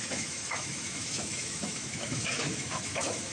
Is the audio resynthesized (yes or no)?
yes